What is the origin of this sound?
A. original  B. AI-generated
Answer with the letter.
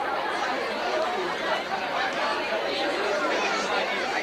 B